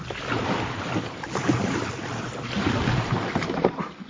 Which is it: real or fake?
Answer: fake